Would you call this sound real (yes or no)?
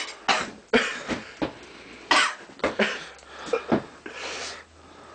yes